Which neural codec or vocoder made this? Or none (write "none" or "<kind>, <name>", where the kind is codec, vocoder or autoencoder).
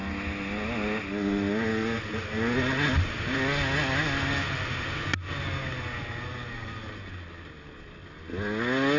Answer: none